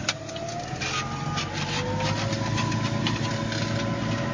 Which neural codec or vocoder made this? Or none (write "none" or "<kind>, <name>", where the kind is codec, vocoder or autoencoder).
none